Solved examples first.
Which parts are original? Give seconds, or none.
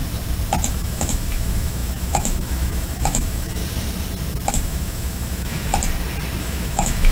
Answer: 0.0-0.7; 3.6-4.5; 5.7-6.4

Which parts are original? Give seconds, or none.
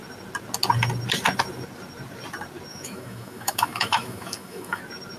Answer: 0.0-2.7; 4.8-5.2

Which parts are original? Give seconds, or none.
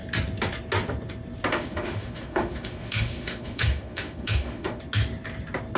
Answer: 0.0-1.5; 4.8-5.8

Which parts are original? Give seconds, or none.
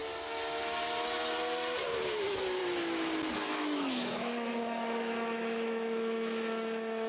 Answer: 0.0-2.2; 2.6-3.3